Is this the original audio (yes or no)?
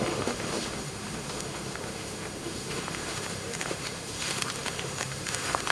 no